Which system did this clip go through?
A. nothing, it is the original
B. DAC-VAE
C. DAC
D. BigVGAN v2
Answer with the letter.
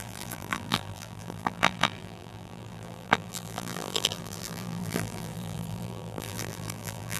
D